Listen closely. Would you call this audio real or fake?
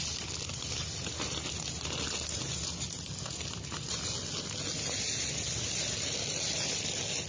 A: real